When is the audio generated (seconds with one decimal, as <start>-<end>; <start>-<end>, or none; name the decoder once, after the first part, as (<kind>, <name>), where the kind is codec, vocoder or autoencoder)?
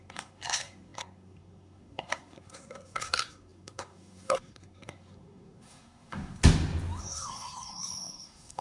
0.0-6.4 (codec, SNAC); 7.0-8.6